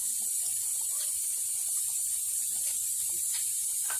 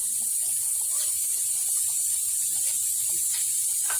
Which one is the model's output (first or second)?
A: first